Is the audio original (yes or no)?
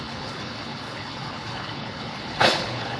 no